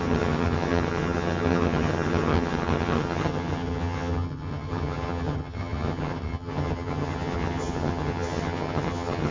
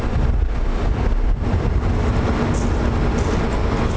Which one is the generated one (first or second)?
first